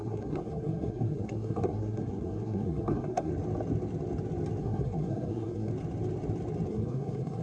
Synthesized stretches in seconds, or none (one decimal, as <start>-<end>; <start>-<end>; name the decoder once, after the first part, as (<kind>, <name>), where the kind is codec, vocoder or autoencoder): 0.0-3.3 (codec, SNAC); 4.6-5.7; 6.7-7.4